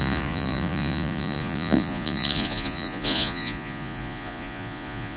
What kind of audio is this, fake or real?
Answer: fake